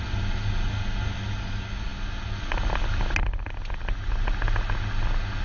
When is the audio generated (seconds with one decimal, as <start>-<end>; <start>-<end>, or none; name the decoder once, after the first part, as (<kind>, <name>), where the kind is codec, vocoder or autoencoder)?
none